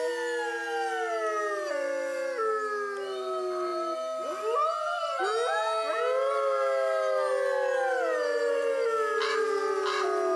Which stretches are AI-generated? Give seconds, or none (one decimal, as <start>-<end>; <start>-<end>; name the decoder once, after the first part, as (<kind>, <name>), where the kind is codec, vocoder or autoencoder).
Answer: none